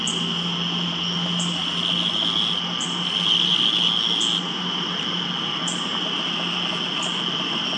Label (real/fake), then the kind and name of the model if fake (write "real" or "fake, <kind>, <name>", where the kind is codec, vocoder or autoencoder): real